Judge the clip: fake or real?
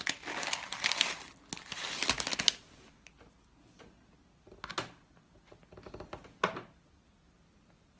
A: real